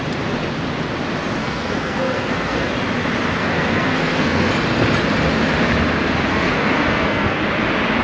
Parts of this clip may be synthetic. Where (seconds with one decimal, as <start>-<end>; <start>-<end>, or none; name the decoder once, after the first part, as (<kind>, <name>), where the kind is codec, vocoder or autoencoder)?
1.4-2.7 (codec, SNAC); 3.4-4.5; 6.3-7.4